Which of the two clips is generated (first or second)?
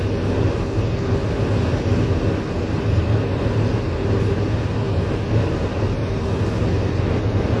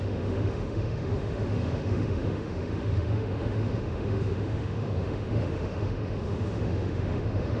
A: second